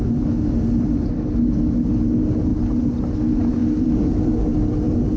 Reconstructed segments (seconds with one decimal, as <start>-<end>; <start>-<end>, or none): 3.6-5.2